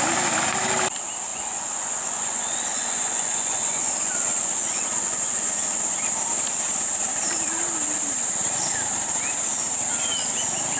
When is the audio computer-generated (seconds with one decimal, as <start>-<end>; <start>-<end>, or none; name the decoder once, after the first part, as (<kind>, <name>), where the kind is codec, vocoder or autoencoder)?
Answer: 1.3-6.0 (vocoder, Vocos)